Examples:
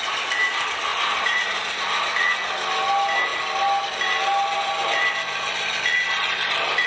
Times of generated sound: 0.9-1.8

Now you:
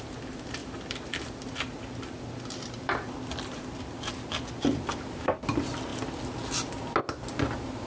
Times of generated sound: 0.6-3.8

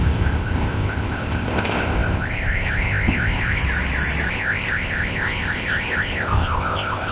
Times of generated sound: 0.0-3.6; 4.3-7.1

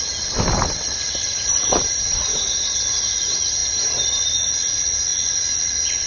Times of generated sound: 1.3-2.8; 3.6-4.3